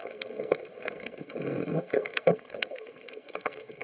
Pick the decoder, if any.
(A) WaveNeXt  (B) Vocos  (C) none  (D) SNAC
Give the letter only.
D